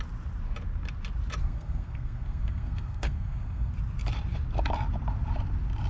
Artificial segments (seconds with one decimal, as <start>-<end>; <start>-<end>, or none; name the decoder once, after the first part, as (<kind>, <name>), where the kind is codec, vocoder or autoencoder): 1.4-3.7 (codec, SNAC)